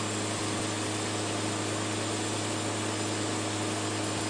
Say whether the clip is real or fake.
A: real